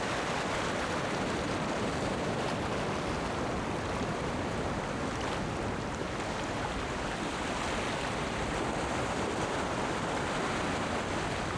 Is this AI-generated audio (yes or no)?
no